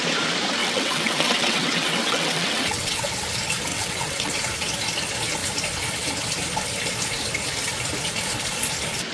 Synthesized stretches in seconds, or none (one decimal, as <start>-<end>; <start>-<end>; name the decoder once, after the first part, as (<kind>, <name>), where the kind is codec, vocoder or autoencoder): 0.6-3.0 (vocoder, WaveNeXt); 3.7-4.3